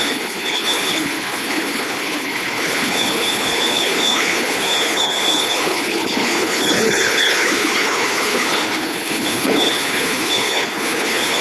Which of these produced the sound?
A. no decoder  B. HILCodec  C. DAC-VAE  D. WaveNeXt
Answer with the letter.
B